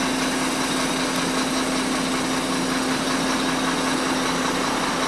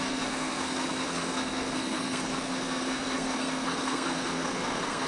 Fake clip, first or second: second